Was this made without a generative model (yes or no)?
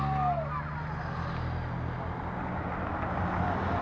yes